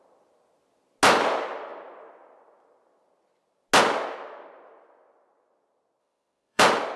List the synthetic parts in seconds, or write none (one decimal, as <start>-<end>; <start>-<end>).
6.0-6.6